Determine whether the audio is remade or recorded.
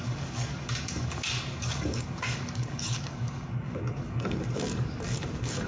remade